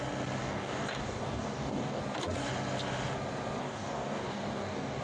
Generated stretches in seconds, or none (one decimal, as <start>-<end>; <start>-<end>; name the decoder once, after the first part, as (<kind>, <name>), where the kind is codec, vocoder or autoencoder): 0.4-2.0 (codec, DAC); 3.6-5.0